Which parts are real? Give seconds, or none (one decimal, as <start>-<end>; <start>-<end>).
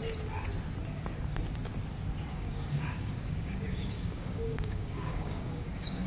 0.0-2.3